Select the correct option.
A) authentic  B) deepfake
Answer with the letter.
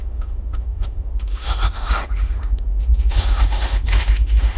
B